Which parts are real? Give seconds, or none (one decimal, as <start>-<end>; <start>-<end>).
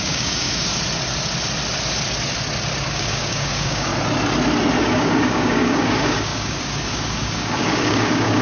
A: 0.7-2.9; 3.9-4.8